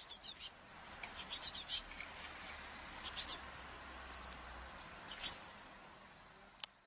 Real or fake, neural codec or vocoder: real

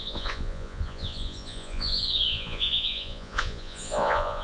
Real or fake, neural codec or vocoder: fake, vocoder, Vocos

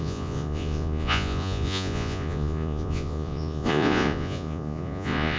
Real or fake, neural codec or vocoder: fake, vocoder, Vocos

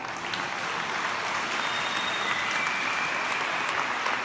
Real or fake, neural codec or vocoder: real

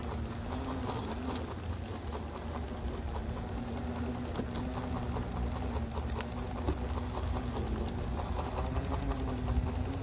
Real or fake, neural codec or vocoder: real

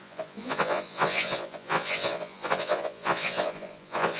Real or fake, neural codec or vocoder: fake, vocoder, Vocos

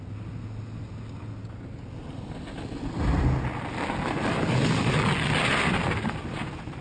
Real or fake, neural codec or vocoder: real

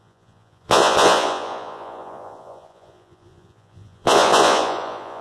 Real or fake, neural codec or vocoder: fake, vocoder, Vocos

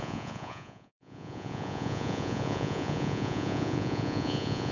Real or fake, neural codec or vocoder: fake, vocoder, Vocos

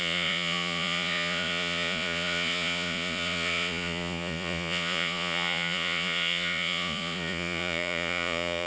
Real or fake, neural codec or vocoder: fake, vocoder, Vocos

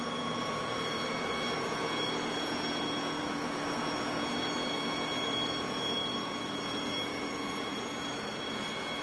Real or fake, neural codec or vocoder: fake, vocoder, Vocos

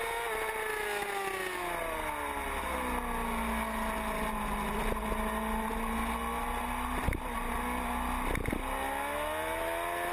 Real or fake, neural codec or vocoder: real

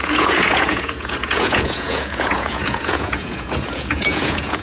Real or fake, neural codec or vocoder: fake, vocoder, Vocos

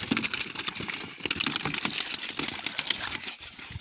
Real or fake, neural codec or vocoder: real